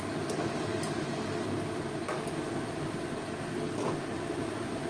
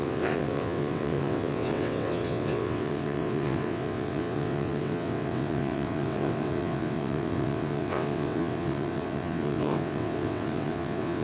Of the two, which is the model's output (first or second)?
second